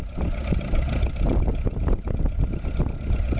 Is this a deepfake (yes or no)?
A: no